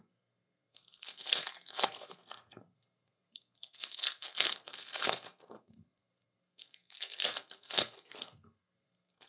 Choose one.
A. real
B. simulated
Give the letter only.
B